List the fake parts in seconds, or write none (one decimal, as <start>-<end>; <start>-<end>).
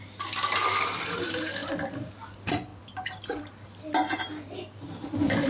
0.0-5.5